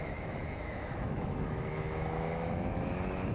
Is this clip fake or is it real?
fake